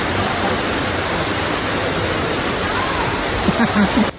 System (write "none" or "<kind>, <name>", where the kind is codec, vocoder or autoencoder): vocoder, BigVGAN v2